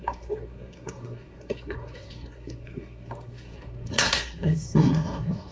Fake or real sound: fake